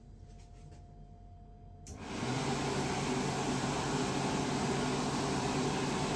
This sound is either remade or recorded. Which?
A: recorded